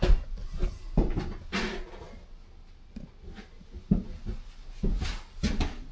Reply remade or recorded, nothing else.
recorded